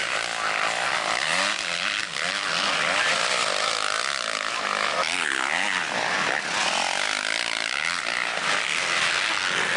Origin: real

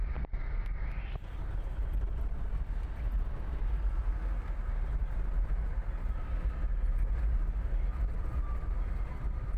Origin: real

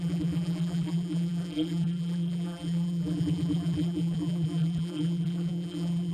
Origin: fake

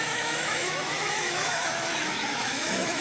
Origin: fake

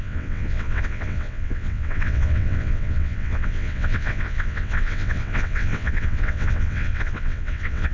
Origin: fake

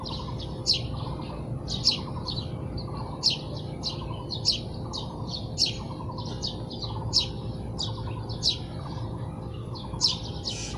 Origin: real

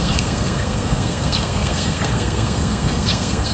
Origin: fake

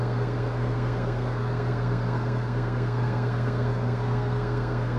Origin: fake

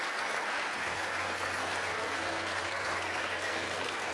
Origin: fake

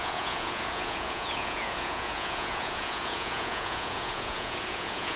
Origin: fake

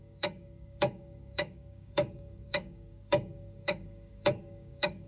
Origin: fake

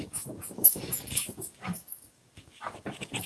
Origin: fake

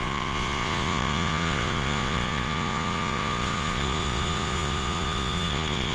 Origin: fake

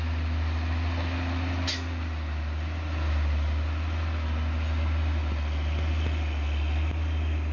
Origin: real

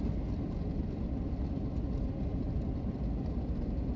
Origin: real